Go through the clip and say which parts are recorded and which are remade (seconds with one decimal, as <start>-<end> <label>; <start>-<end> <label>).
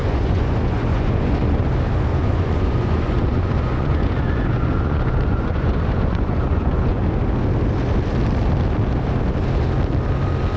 0.0-1.7 remade; 1.7-2.2 recorded; 2.2-7.0 remade; 7.0-10.6 recorded